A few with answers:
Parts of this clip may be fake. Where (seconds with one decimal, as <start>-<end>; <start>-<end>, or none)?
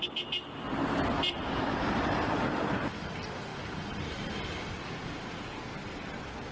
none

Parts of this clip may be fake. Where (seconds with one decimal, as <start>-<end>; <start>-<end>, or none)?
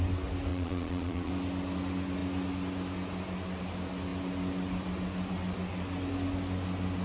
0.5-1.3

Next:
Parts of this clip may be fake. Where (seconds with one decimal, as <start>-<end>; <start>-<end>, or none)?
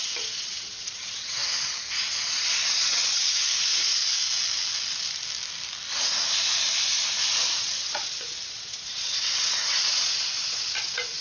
0.0-1.4; 2.6-4.0; 7.6-11.2